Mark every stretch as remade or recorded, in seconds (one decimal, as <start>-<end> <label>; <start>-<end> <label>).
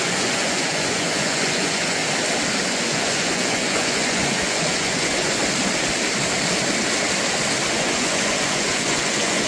0.0-2.0 remade; 2.0-2.7 recorded; 2.7-5.4 remade; 5.4-7.7 recorded; 7.7-9.5 remade